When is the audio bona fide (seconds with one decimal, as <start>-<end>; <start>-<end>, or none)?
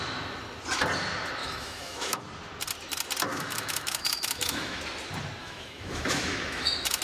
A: 0.0-1.4; 2.2-3.3; 4.8-5.4